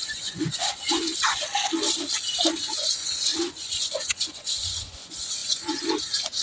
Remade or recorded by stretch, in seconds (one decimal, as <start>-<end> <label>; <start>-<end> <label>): 0.0-1.1 remade; 1.1-2.6 recorded; 2.6-6.4 remade